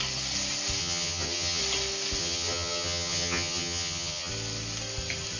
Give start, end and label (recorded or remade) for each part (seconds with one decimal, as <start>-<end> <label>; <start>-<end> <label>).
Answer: 0.0-0.8 recorded; 0.8-1.6 remade; 1.6-2.2 recorded; 2.2-4.3 remade; 4.3-5.4 recorded